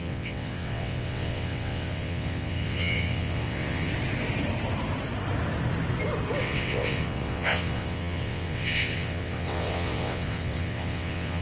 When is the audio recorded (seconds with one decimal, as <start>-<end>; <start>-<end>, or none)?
3.9-6.4